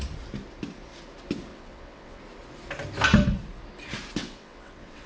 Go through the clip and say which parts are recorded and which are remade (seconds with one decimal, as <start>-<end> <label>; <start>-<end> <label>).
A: 0.0-1.5 recorded; 1.5-2.2 remade; 2.2-4.2 recorded; 4.2-5.1 remade